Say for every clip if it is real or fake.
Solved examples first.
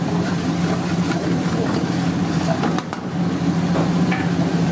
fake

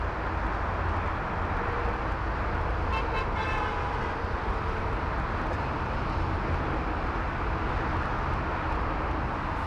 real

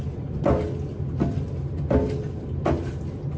real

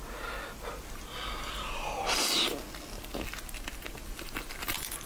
real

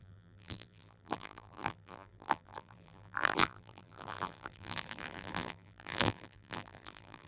fake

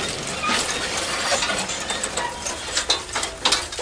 real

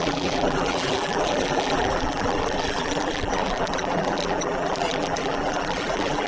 fake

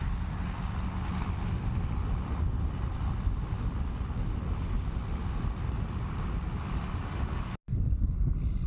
real